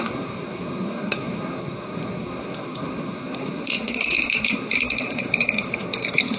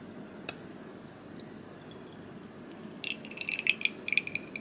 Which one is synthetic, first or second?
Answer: first